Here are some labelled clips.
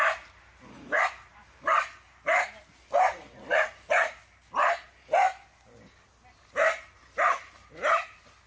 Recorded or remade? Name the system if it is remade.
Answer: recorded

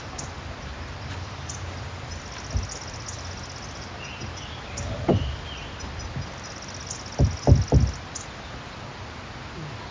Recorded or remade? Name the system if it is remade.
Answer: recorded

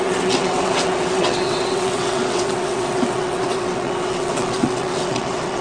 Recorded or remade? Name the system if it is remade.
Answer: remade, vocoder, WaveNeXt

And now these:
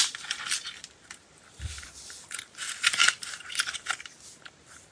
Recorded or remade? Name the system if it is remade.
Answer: recorded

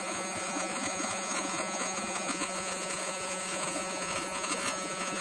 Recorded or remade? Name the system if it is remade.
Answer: remade, vocoder, Vocos